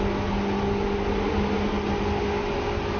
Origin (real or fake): real